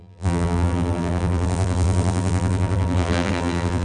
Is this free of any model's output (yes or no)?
no